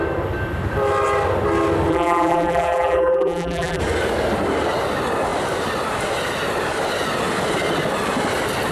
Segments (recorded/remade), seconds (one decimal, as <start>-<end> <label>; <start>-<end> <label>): 0.0-1.9 recorded; 1.9-3.8 remade; 3.8-8.7 recorded